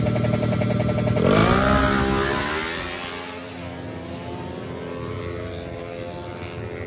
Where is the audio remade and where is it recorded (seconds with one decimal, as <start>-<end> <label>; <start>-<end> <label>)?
0.0-6.9 recorded